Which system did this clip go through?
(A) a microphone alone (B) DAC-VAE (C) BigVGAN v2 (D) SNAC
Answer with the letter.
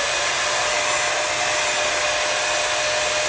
A